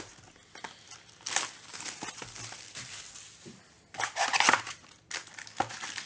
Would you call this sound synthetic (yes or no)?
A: no